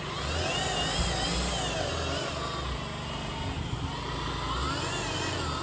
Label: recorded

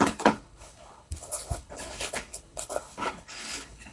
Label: remade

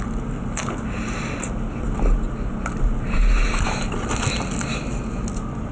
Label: recorded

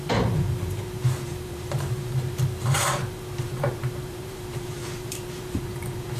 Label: remade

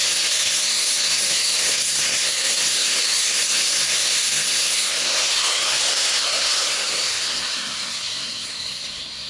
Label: remade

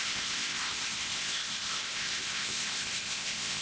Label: remade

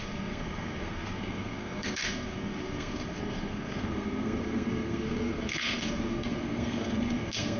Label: remade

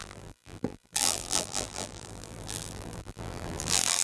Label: remade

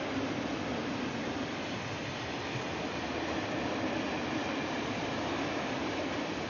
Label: recorded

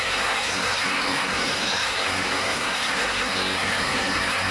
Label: remade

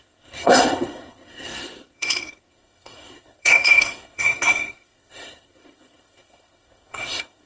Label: remade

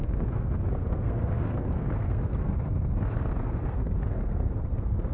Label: remade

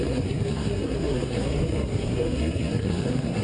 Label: remade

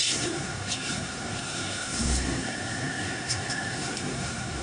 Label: remade